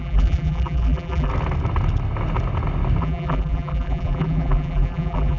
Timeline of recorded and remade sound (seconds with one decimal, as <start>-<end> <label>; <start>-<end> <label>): 0.0-1.3 remade; 1.3-3.0 recorded; 3.0-5.4 remade